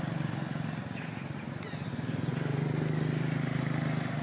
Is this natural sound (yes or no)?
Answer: yes